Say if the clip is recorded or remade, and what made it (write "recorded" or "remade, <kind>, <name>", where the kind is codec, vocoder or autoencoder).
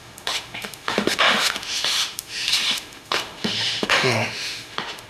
remade, autoencoder, DAC-VAE